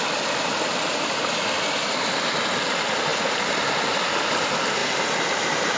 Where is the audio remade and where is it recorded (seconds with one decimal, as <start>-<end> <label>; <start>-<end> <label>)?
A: 0.0-5.8 recorded